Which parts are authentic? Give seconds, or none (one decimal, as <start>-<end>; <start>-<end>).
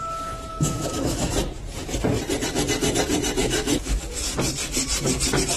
0.0-0.5; 1.3-3.4; 4.0-5.6